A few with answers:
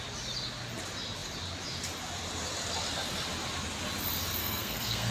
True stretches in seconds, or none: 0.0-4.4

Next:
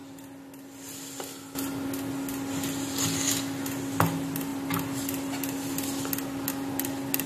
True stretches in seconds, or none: 0.0-7.3

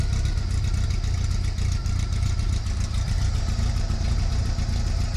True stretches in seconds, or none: 0.0-1.8; 4.5-5.2